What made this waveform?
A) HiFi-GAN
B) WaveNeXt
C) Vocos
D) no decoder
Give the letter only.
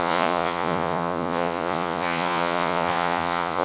C